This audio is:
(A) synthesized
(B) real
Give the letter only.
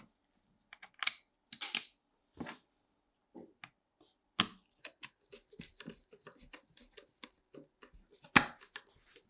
B